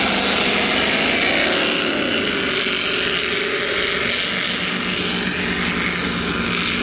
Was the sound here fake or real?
real